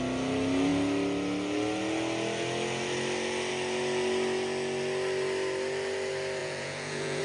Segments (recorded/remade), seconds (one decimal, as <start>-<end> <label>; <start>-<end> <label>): 0.0-6.4 recorded; 6.4-7.2 remade